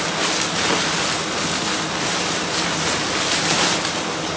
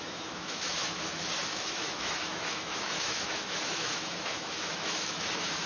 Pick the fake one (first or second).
second